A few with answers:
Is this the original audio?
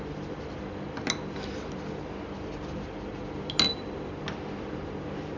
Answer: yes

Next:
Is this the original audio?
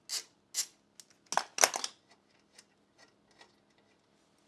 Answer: yes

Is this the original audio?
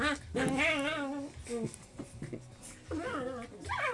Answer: yes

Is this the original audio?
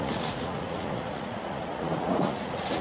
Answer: no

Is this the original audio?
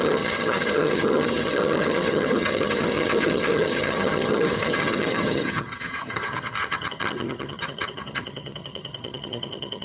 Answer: no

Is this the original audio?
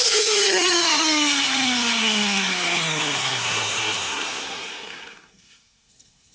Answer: no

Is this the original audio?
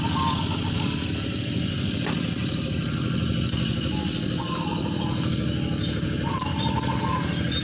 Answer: yes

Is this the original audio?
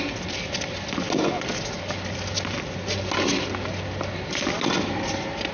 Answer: yes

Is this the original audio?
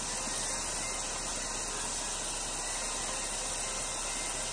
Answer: yes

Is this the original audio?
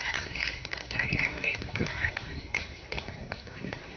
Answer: no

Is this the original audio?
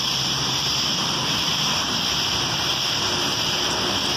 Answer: no